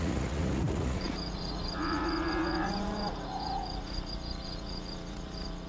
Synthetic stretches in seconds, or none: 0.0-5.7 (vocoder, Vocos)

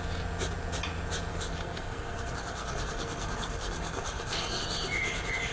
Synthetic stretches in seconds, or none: 1.3-4.6 (codec, SNAC)

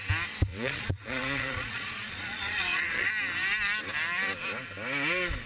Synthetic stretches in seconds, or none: 0.5-3.1 (vocoder, Vocos)

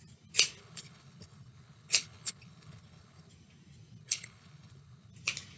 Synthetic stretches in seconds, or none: 0.6-3.3 (codec, HILCodec); 4.0-5.1

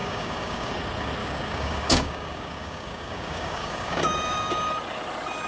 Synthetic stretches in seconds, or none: 0.0-0.7 (codec, DAC); 1.2-4.5

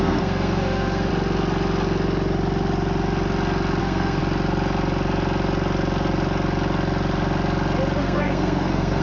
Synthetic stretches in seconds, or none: 0.0-1.1 (codec, SNAC); 3.8-4.2; 8.0-9.0

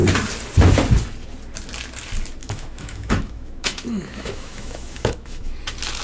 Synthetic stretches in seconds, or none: 2.4-5.6 (autoencoder, DAC-VAE)